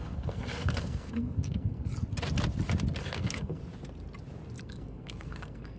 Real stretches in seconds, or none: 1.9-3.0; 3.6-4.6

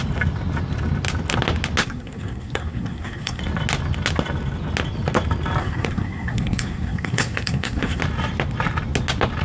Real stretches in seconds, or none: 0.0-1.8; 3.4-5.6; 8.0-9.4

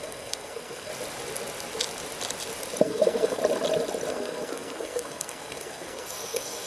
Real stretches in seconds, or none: 0.9-2.8; 3.4-4.1

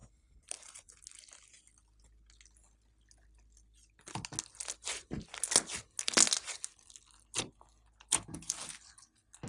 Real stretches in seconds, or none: 0.0-9.5